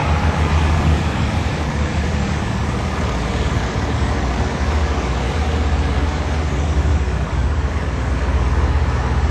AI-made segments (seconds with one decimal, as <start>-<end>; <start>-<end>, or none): 0.0-9.3